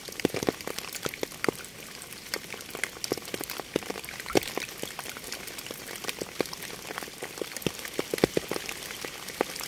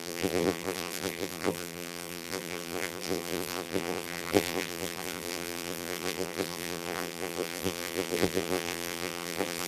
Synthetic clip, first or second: second